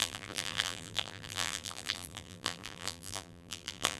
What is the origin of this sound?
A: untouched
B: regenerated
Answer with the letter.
B